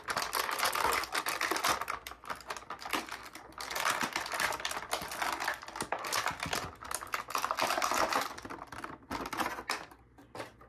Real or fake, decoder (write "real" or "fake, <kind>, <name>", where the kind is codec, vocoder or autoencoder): real